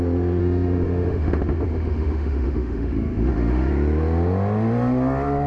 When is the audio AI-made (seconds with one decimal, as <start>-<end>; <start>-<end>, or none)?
0.4-3.7